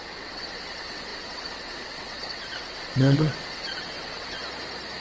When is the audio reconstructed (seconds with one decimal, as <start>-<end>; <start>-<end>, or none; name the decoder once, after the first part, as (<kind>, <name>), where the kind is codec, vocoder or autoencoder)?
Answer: 0.0-4.4 (vocoder, WaveNeXt)